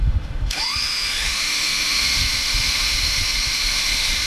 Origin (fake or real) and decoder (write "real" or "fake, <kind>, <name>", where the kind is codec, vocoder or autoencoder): fake, autoencoder, DAC-VAE